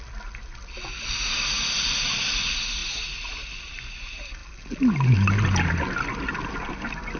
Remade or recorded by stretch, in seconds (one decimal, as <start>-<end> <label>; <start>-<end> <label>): 0.0-7.2 recorded